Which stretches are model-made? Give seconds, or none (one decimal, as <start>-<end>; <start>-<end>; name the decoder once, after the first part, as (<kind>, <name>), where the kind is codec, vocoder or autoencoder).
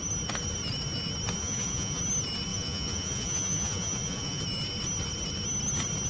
1.4-2.0 (vocoder, Vocos); 2.5-4.4